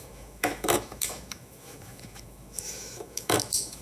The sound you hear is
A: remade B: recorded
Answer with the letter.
A